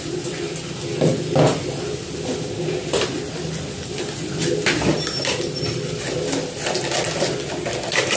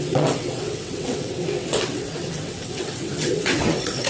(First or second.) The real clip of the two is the first